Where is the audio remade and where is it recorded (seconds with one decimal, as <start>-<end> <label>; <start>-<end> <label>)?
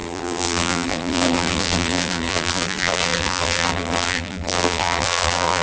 0.0-5.6 remade